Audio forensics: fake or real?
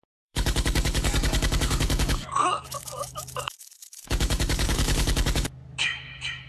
fake